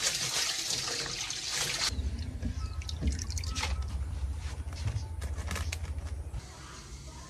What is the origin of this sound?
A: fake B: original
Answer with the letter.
B